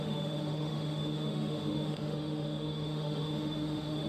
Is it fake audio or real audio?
fake